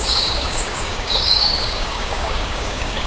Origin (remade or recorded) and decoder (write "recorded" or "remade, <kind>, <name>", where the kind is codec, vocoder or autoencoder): remade, codec, DAC